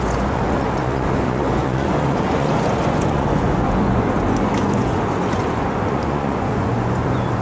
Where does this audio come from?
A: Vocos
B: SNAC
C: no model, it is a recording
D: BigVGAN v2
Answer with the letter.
A